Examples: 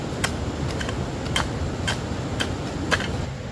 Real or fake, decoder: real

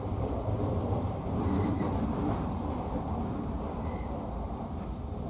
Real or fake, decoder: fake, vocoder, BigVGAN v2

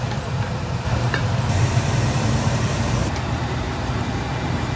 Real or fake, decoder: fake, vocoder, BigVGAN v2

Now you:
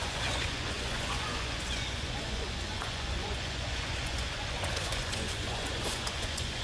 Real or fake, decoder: fake, vocoder, Vocos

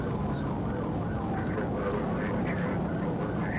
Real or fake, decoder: real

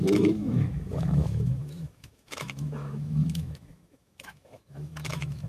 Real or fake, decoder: fake, autoencoder, DAC-VAE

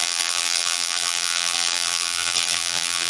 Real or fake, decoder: fake, vocoder, BigVGAN v2